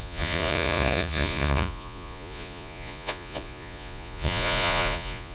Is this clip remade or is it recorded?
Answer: remade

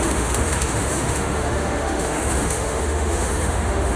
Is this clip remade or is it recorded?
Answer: remade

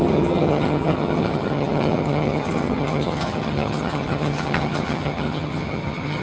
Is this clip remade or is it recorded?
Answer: remade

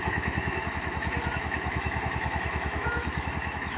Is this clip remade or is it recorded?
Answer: remade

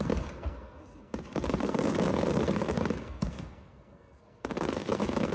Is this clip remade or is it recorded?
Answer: remade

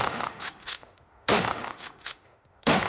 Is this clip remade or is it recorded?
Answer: remade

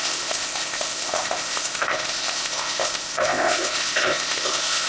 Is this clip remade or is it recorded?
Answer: remade